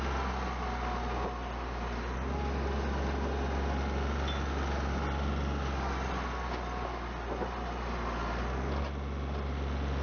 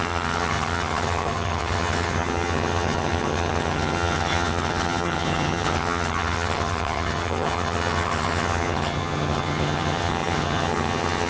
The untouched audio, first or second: first